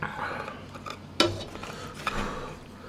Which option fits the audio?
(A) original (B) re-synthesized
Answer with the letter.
A